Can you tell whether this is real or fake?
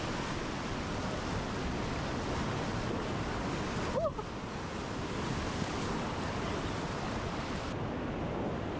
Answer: real